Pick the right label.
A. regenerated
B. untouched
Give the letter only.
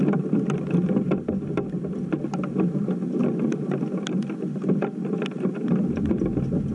B